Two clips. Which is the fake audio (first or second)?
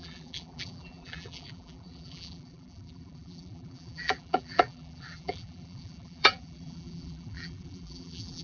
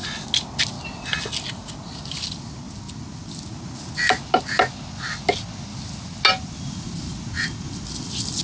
first